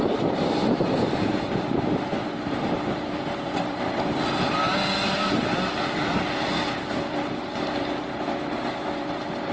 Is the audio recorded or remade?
remade